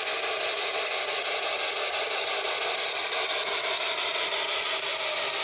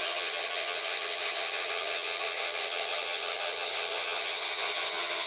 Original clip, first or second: first